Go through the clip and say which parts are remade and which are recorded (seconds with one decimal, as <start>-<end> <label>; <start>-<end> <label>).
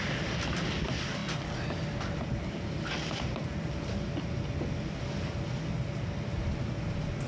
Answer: 0.0-7.3 recorded